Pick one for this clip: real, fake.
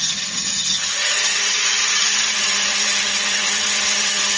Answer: fake